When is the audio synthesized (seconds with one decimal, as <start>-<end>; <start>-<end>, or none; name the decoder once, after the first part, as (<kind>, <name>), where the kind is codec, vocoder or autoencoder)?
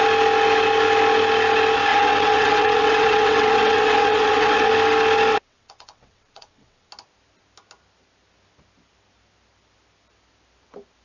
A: 1.9-4.7 (vocoder, WaveNeXt); 5.3-6.9